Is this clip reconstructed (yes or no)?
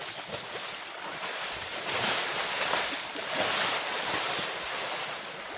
no